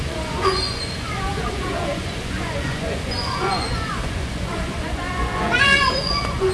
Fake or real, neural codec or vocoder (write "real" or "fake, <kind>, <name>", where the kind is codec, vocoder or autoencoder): fake, vocoder, Vocos